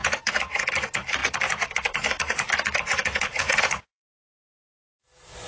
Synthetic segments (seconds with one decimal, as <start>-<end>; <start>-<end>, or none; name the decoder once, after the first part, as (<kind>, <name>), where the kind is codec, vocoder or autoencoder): 0.0-0.7 (vocoder, Vocos); 3.0-4.1